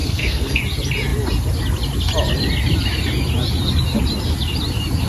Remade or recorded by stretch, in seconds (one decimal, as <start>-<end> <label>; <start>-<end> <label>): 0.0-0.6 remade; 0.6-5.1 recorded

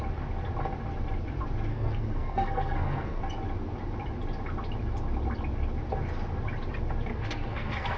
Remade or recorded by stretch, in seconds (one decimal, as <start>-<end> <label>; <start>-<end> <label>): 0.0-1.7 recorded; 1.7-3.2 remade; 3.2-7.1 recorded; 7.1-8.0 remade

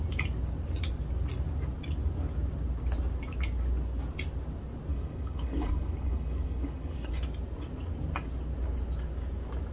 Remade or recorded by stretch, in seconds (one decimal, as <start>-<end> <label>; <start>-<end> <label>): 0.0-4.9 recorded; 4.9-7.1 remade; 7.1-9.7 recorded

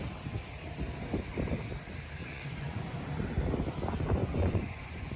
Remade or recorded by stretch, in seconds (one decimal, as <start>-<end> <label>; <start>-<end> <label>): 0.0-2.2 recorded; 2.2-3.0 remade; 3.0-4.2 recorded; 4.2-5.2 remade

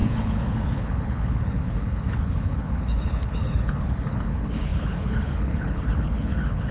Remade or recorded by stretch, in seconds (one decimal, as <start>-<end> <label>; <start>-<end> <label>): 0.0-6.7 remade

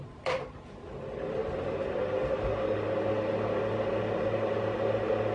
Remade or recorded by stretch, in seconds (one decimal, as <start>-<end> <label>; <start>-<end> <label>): 0.0-5.3 recorded

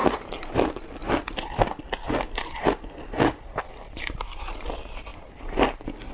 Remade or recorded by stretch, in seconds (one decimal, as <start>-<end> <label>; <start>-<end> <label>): 0.0-0.6 remade; 0.6-6.1 recorded